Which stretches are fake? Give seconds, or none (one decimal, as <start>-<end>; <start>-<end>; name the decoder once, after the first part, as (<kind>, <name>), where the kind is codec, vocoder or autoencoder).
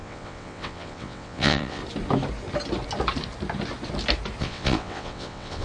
0.0-1.8 (vocoder, WaveNeXt); 4.4-5.6